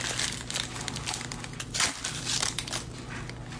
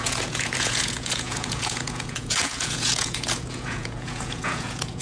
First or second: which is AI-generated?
second